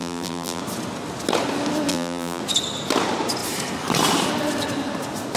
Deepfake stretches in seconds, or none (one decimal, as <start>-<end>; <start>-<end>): 0.0-0.6; 1.9-2.4